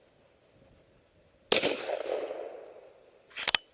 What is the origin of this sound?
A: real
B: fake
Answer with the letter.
A